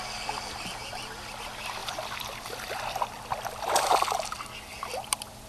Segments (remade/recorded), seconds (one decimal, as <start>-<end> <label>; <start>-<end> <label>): 0.0-1.8 recorded; 1.8-4.1 remade; 4.1-4.7 recorded; 4.7-5.5 remade